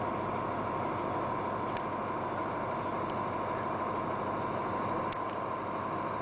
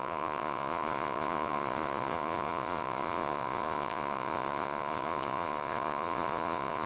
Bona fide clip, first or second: first